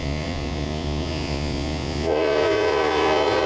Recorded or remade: remade